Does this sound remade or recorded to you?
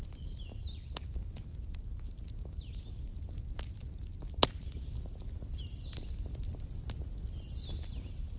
recorded